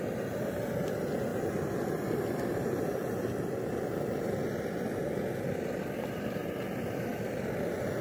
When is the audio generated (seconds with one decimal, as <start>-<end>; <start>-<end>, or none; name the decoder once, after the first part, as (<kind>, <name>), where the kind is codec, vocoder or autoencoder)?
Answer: none